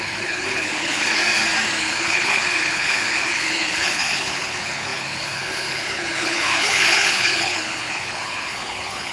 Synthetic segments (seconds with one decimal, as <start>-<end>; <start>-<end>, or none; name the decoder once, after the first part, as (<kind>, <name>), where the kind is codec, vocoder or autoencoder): 0.0-1.2 (codec, HILCodec); 1.8-9.1